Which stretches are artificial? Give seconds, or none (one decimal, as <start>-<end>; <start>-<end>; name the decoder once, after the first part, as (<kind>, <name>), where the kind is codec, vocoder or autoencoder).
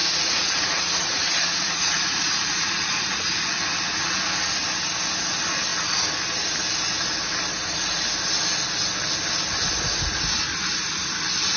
0.0-3.3 (vocoder, Vocos)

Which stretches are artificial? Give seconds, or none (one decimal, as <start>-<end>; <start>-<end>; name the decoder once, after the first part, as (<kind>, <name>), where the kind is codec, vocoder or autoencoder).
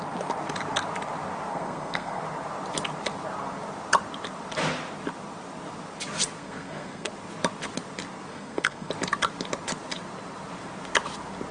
1.5-2.2 (codec, SNAC); 6.4-7.1; 8.3-8.9